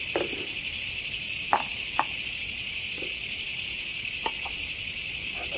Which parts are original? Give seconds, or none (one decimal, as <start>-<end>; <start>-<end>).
0.0-5.6